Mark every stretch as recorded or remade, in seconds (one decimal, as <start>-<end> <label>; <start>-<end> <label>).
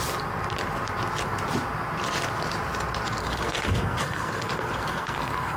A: 0.0-3.2 recorded; 3.2-5.6 remade